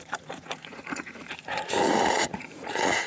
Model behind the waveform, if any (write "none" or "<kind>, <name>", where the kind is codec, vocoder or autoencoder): vocoder, Vocos